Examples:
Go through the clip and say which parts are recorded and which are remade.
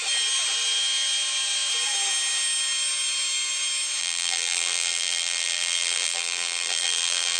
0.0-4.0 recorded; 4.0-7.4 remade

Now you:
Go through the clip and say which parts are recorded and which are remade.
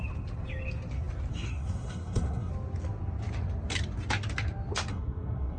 0.0-1.3 recorded; 1.3-2.5 remade; 2.5-4.9 recorded; 4.9-5.6 remade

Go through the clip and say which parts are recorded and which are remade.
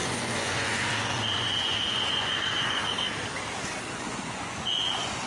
0.0-2.8 remade; 2.8-3.9 recorded; 3.9-5.3 remade